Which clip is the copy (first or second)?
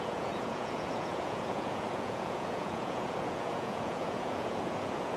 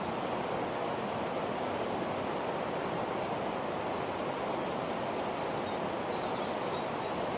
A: first